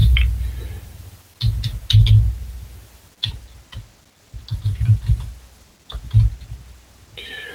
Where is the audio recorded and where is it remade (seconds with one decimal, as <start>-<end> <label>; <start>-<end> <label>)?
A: 0.0-7.5 recorded